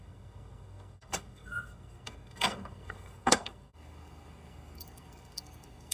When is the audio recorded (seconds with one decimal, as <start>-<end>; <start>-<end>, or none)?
none